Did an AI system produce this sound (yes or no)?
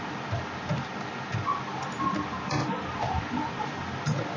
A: no